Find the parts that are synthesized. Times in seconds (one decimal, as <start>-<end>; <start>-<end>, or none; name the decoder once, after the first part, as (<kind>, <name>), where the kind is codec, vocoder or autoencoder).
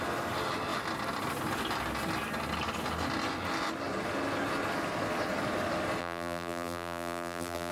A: 6.0-7.7 (vocoder, BigVGAN v2)